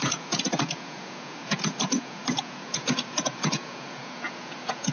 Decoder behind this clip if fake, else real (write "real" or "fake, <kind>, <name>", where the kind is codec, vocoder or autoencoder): fake, vocoder, Vocos